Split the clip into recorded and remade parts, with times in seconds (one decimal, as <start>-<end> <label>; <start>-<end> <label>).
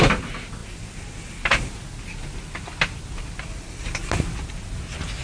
0.0-5.2 recorded